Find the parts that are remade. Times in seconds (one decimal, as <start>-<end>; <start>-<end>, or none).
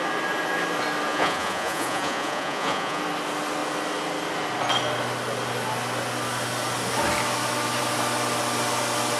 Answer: 1.1-3.0